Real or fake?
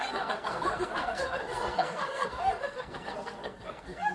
fake